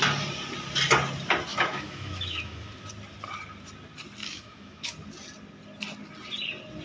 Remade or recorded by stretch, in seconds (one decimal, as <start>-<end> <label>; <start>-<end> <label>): 0.0-1.5 recorded; 1.5-2.7 remade; 2.7-4.2 recorded; 4.2-4.9 remade; 4.9-6.8 recorded